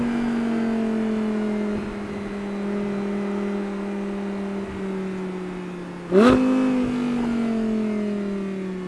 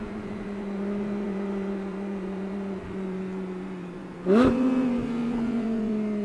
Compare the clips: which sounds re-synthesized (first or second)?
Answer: second